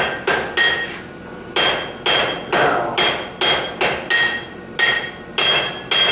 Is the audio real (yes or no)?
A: yes